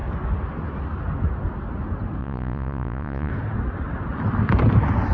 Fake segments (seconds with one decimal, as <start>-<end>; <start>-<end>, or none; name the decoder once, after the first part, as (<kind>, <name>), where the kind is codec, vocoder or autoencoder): 2.2-3.3 (vocoder, Vocos)